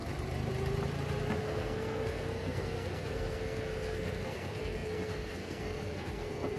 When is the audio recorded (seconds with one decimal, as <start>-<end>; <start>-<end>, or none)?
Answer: 0.0-1.4